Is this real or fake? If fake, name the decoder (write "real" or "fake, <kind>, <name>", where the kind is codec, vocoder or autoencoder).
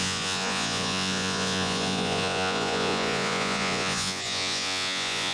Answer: fake, vocoder, Vocos